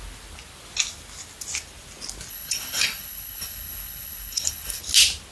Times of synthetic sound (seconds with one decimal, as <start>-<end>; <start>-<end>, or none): 2.3-4.8